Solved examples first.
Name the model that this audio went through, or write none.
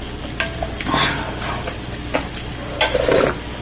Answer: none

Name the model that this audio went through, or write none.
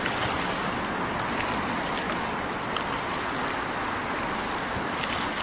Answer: none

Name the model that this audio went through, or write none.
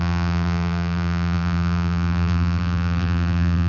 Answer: vocoder, BigVGAN v2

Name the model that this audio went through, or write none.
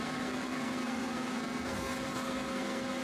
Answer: codec, SNAC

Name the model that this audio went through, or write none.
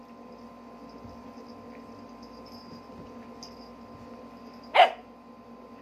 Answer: none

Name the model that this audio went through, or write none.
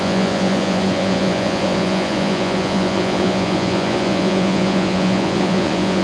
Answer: vocoder, Vocos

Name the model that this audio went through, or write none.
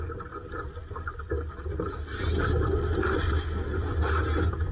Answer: none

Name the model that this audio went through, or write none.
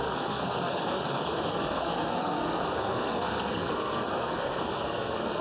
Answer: codec, SNAC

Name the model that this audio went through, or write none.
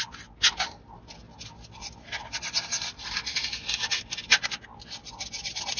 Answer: none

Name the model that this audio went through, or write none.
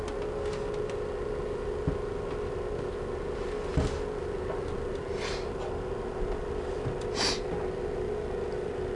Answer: none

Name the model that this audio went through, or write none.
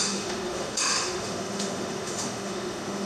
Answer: autoencoder, DAC-VAE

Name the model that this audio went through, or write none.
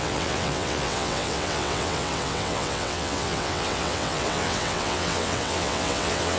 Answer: vocoder, WaveNeXt